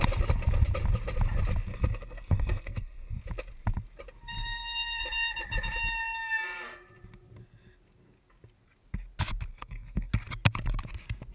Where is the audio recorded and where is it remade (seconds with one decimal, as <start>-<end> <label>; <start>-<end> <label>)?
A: 0.0-1.7 recorded; 1.7-3.2 remade; 3.2-9.5 recorded; 9.5-10.1 remade; 10.1-11.3 recorded